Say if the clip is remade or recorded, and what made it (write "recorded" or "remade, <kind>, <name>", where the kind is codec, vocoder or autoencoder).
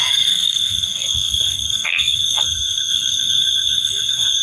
remade, codec, SNAC